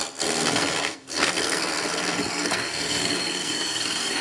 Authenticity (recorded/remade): remade